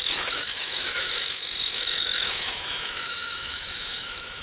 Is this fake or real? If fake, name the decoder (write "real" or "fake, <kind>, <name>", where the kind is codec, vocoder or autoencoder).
fake, autoencoder, DAC-VAE